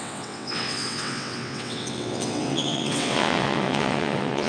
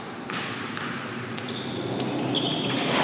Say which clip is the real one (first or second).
second